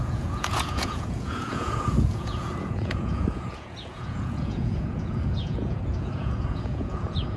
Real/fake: fake